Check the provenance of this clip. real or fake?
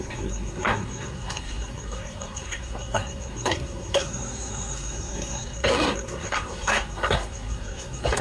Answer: fake